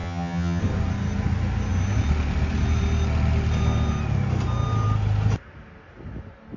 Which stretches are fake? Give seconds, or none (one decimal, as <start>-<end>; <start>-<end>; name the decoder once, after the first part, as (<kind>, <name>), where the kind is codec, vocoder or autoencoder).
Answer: 0.0-0.6 (vocoder, HiFi-GAN)